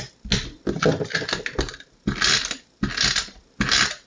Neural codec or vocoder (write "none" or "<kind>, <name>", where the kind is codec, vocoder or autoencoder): none